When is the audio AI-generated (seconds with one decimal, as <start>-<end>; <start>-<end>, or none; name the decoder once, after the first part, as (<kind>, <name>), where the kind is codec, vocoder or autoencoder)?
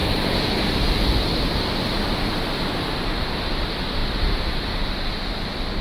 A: none